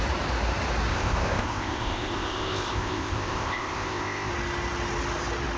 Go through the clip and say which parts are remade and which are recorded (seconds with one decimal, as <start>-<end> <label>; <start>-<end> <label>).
0.0-0.9 recorded; 0.9-4.3 remade; 4.3-5.6 recorded